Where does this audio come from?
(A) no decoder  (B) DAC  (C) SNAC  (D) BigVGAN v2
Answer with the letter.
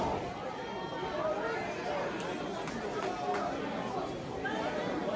A